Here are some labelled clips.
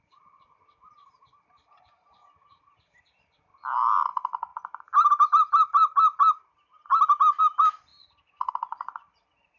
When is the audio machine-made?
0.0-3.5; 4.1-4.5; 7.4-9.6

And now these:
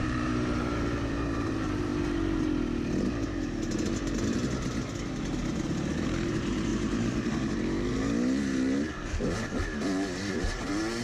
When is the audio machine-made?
0.0-1.9; 6.3-6.7; 10.3-11.0

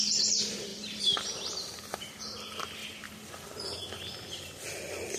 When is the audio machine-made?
0.7-2.2; 2.8-3.8

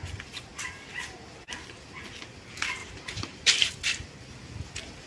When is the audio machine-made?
2.8-3.7

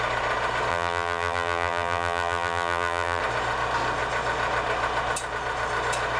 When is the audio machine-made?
0.7-3.2

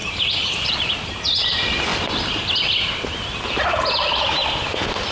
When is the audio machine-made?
0.7-1.9

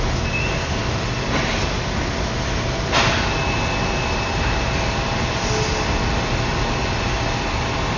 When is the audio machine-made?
none

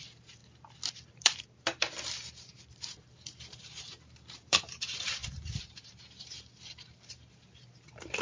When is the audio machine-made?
0.0-0.4; 1.2-8.2